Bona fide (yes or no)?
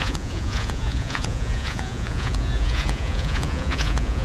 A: no